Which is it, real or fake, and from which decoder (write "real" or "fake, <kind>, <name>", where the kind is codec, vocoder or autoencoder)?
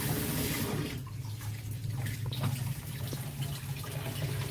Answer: real